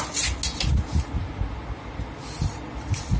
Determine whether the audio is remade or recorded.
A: recorded